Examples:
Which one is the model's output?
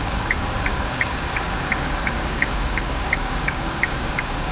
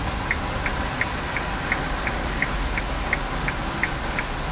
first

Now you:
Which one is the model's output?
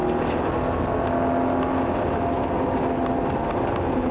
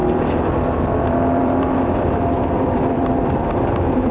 second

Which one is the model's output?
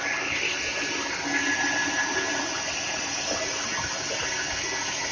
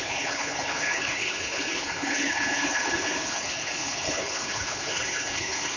second